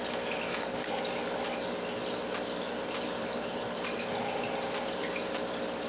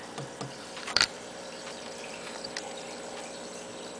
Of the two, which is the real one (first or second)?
first